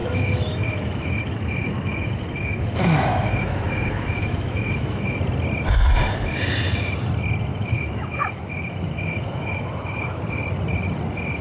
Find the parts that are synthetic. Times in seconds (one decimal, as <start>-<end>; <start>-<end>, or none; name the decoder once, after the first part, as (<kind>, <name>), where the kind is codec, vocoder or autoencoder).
0.0-5.2 (autoencoder, DAC-VAE); 7.5-10.2